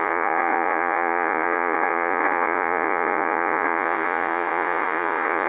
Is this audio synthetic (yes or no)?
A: yes